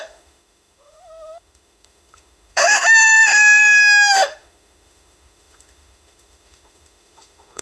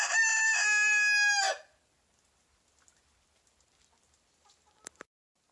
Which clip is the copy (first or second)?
first